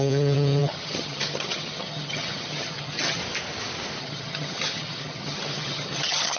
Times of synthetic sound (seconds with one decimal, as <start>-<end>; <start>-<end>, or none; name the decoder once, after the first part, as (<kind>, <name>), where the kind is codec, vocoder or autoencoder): 0.0-3.2 (vocoder, HiFi-GAN); 4.0-6.4